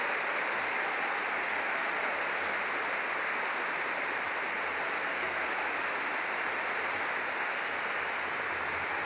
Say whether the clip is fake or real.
real